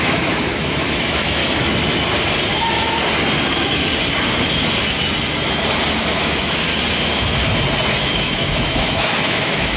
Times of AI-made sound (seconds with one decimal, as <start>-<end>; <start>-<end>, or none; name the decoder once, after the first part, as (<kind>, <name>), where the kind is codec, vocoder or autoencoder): 0.0-1.4 (autoencoder, DAC-VAE); 6.2-6.7; 8.1-9.8